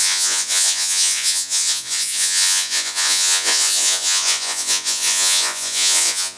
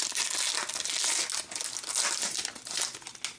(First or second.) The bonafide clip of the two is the second